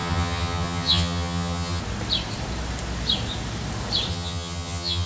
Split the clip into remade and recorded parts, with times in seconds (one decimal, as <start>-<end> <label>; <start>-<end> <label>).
0.0-1.8 remade; 1.8-4.1 recorded; 4.1-5.1 remade